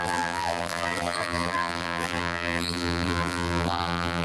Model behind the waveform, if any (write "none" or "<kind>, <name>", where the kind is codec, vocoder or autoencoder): vocoder, BigVGAN v2